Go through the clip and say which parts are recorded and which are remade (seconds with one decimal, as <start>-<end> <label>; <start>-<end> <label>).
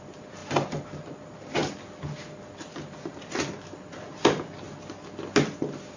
0.0-6.0 recorded